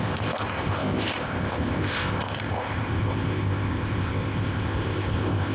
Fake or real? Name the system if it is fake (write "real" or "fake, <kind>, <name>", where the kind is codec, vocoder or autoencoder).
fake, codec, ZipCodec